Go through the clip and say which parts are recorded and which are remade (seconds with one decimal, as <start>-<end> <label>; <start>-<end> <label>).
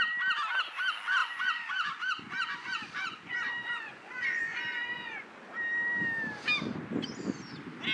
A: 0.0-1.2 recorded; 1.2-5.3 remade; 5.3-7.9 recorded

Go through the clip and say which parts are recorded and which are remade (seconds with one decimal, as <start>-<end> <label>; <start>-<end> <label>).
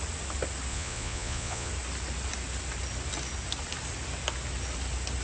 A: 0.0-0.7 recorded; 0.7-1.7 remade; 1.7-5.2 recorded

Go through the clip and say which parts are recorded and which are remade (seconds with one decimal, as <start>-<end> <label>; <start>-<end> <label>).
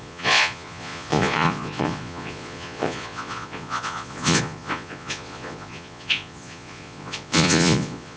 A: 0.0-8.2 remade